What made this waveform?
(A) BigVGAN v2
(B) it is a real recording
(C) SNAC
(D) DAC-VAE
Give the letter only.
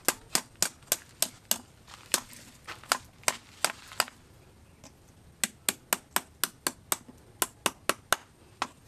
B